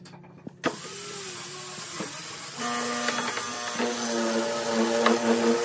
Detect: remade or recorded recorded